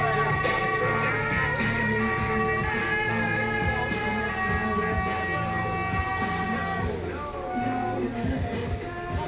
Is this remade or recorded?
recorded